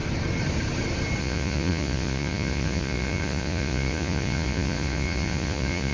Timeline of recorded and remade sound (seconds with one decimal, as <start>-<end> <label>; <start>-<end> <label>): 0.0-1.2 recorded; 1.2-5.9 remade